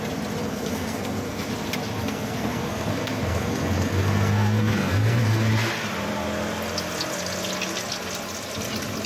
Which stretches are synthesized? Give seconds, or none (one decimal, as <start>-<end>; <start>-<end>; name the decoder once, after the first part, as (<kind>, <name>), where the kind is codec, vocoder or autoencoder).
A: 0.4-1.5 (codec, SNAC); 2.0-5.5